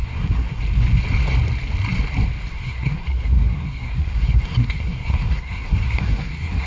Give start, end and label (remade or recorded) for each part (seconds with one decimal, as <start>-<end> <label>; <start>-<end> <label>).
0.0-0.6 remade; 0.6-2.5 recorded; 2.5-6.7 remade